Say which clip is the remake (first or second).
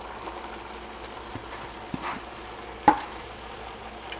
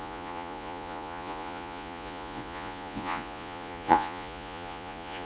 second